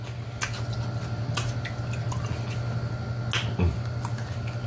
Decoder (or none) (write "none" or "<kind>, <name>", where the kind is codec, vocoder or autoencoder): none